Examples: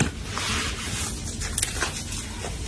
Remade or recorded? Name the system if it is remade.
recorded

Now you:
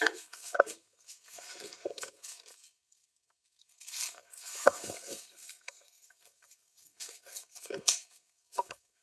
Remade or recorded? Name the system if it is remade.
remade, codec, SNAC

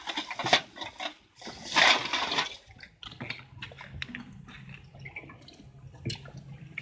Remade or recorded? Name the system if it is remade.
recorded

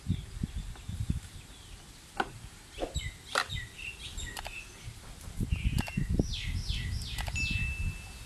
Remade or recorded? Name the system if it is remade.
recorded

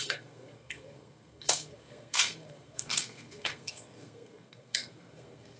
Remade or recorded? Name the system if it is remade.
remade, codec, SNAC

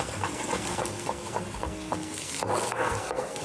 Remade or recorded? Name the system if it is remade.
remade, codec, SNAC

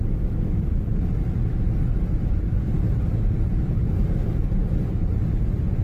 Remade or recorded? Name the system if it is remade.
recorded